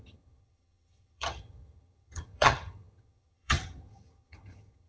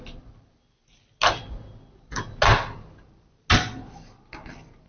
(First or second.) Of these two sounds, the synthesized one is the first